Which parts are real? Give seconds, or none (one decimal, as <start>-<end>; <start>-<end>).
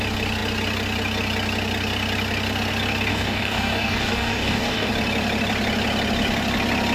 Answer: 0.0-3.1; 4.9-6.9